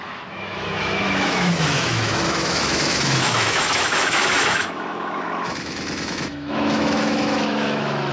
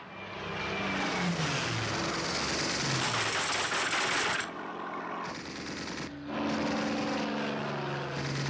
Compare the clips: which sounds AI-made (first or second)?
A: first